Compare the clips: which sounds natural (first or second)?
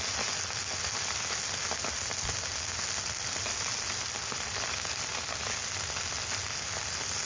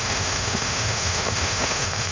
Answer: first